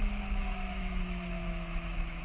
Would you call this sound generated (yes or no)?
yes